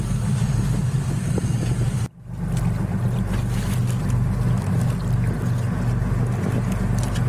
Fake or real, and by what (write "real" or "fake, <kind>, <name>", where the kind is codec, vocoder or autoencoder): real